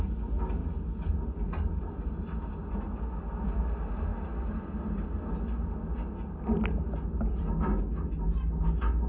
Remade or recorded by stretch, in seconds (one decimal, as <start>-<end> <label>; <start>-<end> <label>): 0.0-9.1 recorded